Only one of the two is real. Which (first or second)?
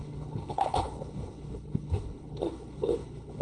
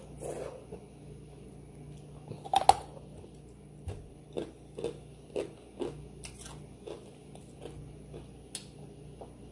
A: second